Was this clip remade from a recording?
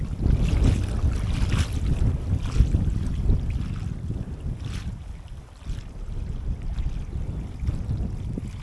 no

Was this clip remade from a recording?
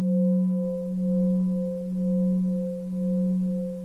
no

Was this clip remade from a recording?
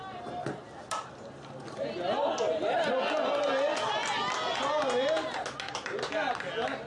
no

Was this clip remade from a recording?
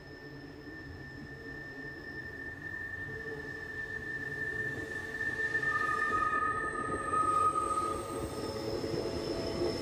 no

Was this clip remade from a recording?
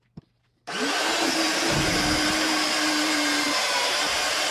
yes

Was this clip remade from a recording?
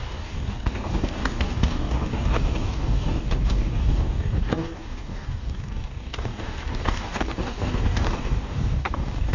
yes